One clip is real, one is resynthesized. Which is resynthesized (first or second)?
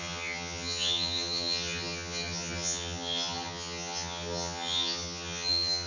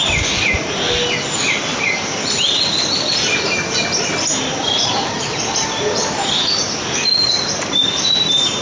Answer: first